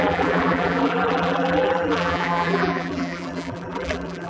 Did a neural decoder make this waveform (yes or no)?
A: yes